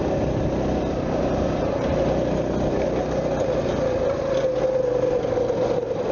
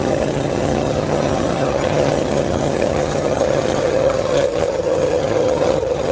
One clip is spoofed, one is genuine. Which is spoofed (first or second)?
second